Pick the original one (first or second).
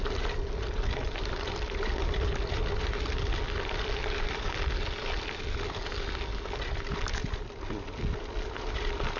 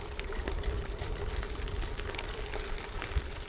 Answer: first